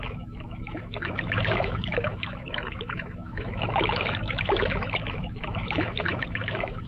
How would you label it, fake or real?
fake